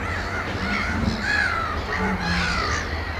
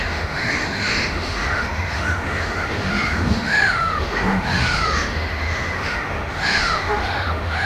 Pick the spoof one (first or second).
second